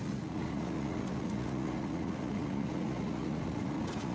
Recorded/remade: remade